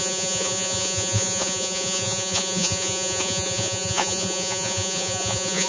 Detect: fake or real fake